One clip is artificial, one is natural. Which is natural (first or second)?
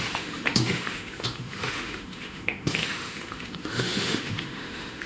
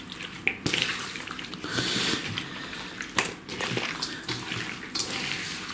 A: second